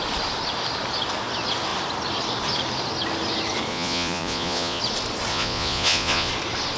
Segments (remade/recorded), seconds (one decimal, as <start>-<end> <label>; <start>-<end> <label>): 0.0-3.7 recorded; 3.7-4.8 remade; 4.8-5.3 recorded; 5.3-6.3 remade; 6.3-6.8 recorded